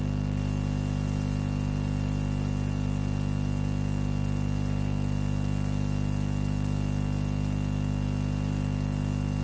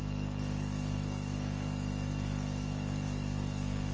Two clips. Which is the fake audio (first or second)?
second